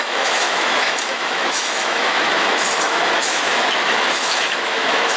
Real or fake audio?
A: fake